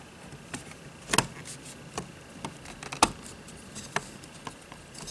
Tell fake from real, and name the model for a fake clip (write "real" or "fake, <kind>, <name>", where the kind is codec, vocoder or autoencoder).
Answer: real